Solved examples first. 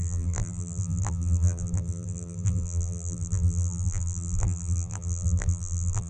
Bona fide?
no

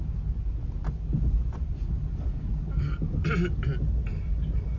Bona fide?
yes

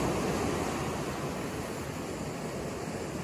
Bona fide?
yes